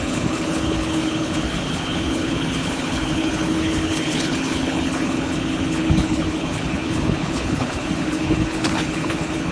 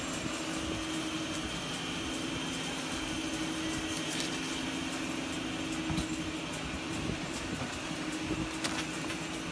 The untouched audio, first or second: second